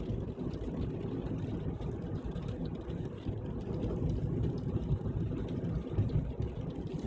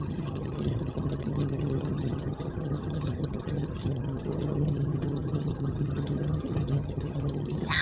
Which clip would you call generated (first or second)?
second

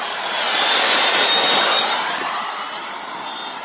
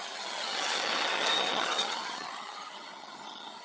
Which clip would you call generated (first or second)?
second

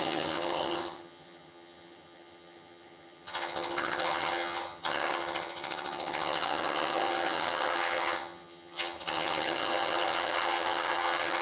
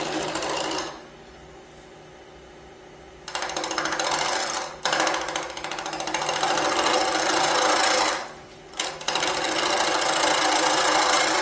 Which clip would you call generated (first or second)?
first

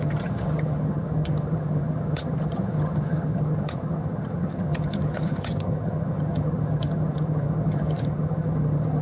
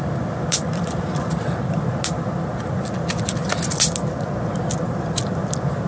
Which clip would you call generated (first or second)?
first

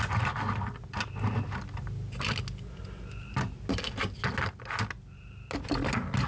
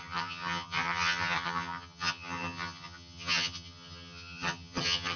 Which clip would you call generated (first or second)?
second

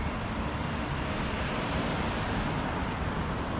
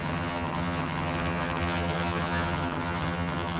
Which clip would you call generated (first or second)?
second